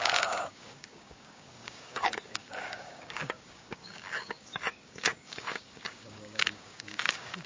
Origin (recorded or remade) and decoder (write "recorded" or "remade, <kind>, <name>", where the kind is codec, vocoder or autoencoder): remade, codec, DAC